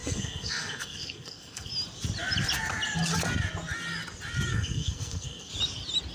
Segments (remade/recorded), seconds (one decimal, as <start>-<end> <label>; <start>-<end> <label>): 0.0-1.7 remade; 1.7-4.5 recorded; 4.5-5.5 remade; 5.5-6.1 recorded